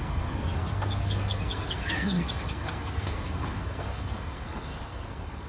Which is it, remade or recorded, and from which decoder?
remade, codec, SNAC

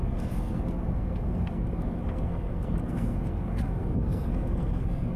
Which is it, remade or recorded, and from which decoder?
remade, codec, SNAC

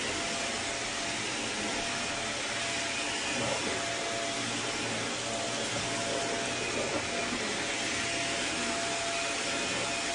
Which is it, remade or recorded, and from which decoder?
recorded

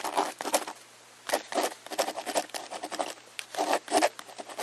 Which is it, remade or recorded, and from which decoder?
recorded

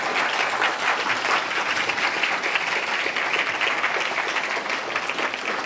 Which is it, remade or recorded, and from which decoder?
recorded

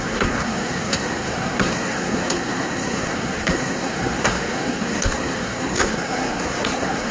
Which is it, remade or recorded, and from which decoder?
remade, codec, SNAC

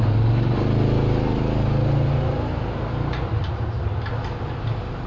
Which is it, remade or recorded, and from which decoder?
recorded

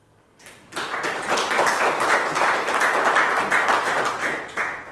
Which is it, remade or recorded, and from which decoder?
recorded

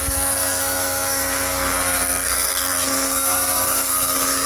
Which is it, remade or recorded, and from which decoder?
remade, codec, SNAC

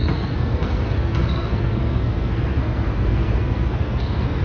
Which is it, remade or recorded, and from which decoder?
remade, codec, SNAC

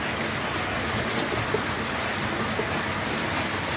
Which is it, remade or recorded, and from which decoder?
recorded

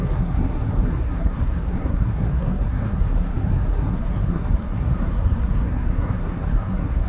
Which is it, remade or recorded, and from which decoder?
remade, codec, SNAC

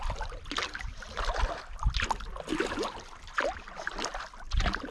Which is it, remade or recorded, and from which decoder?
recorded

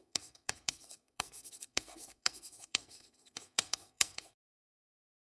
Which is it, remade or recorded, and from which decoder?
remade, codec, SNAC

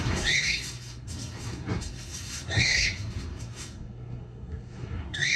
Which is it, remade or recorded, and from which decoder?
remade, codec, SNAC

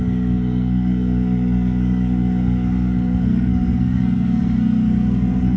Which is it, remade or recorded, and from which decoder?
remade, codec, SNAC